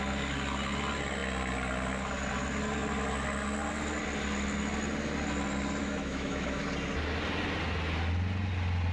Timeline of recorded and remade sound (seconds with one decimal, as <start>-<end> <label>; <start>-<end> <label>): 0.0-5.8 recorded; 5.8-6.6 remade; 6.6-8.9 recorded